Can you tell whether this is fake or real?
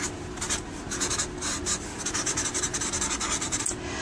real